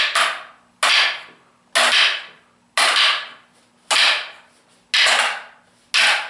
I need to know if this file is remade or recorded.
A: recorded